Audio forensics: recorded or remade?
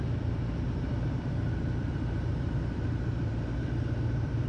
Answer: remade